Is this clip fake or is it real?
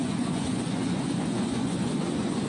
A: fake